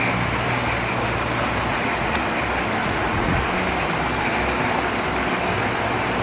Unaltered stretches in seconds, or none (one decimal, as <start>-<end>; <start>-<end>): 0.0-1.7; 2.2-2.8; 3.5-6.2